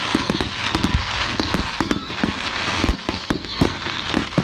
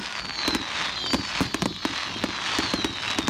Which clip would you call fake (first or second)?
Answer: first